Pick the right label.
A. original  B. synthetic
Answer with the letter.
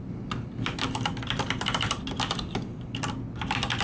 A